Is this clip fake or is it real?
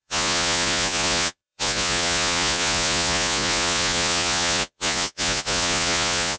fake